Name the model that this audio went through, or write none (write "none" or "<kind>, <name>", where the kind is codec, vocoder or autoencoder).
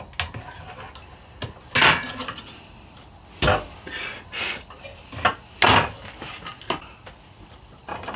none